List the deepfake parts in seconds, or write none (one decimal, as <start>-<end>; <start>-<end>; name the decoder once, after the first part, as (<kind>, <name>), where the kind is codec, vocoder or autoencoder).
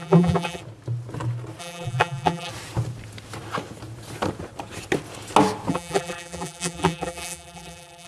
0.0-0.6 (vocoder, BigVGAN v2); 1.6-2.5; 5.7-8.1